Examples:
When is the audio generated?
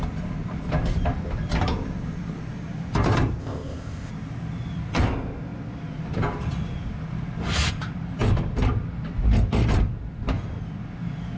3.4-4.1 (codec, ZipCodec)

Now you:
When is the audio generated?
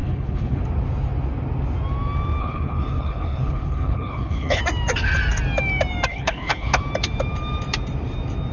0.0-0.6 (codec, HILCodec); 2.4-4.6; 6.1-6.8